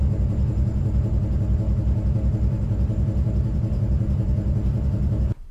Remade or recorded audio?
remade